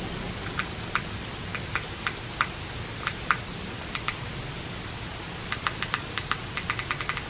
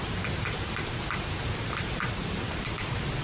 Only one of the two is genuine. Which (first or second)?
first